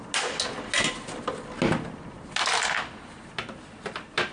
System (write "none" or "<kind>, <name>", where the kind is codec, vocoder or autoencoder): none